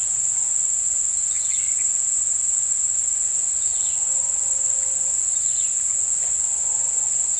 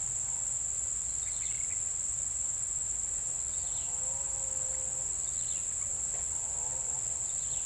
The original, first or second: second